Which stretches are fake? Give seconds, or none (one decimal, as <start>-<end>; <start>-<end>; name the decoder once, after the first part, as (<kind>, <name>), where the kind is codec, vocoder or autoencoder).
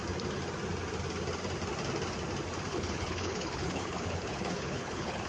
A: 2.7-5.3 (codec, HILCodec)